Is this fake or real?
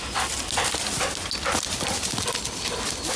real